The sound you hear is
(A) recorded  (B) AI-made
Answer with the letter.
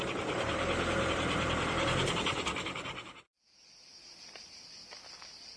B